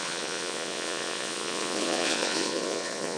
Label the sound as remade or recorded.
remade